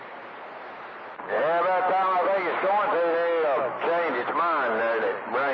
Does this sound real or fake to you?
real